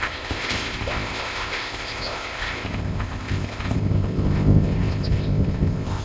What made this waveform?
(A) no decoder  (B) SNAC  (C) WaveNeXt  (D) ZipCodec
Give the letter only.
D